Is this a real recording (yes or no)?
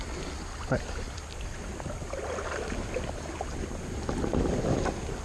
yes